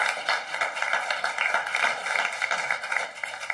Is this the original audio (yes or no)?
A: yes